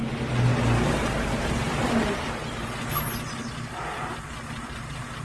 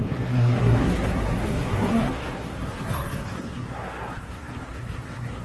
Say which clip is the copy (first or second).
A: second